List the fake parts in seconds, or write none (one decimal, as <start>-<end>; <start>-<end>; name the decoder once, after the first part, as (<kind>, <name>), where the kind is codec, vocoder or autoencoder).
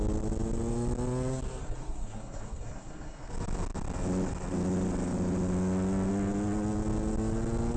1.6-3.3 (codec, SNAC)